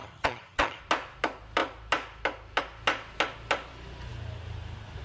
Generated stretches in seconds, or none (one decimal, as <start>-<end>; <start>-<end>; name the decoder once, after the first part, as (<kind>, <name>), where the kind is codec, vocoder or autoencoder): 0.0-0.8 (vocoder, HiFi-GAN)